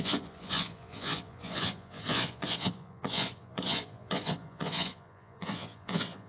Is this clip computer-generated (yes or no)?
yes